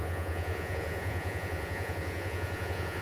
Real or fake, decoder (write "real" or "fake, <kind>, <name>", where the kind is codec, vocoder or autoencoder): fake, vocoder, Vocos